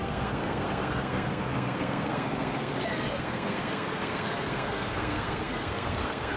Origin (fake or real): fake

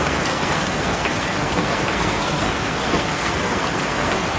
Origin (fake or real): fake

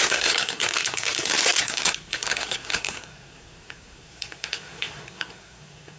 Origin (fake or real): fake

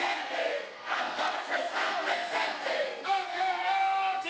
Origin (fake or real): fake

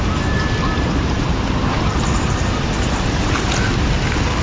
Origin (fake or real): real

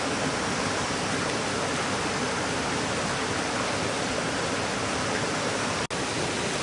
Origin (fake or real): real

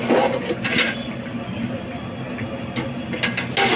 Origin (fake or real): real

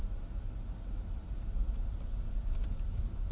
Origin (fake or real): real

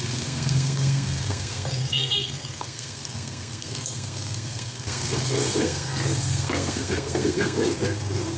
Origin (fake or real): fake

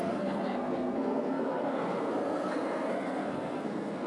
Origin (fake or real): fake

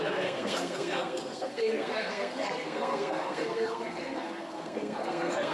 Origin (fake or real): fake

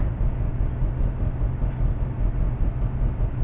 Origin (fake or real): real